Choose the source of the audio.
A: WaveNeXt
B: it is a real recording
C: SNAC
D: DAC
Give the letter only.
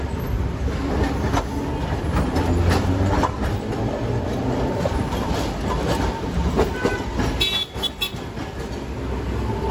B